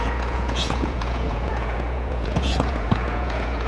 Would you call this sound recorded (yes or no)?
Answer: no